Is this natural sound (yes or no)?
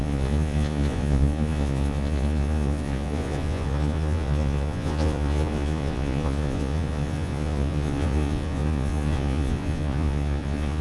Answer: no